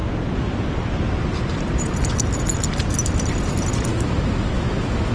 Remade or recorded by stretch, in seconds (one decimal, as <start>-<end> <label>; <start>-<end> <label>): 0.0-3.9 recorded; 3.9-5.1 remade